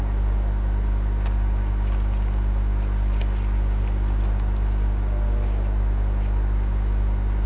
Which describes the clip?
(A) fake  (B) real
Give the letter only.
B